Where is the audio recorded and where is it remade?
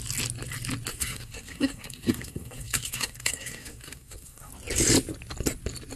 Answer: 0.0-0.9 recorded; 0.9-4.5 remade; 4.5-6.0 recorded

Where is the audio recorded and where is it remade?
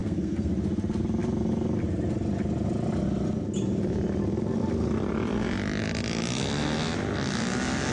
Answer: 0.0-0.5 remade; 0.5-7.9 recorded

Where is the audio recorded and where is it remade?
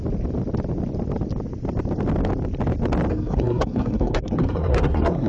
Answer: 0.0-3.1 recorded; 3.1-5.3 remade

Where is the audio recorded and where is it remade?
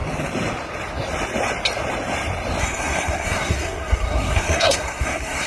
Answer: 0.0-2.6 recorded; 2.6-5.5 remade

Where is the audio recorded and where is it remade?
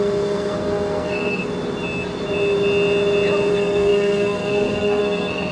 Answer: 0.0-1.4 remade; 1.4-3.5 recorded; 3.5-5.5 remade